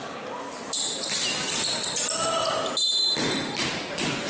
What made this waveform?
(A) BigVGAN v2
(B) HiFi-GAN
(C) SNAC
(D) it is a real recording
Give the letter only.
D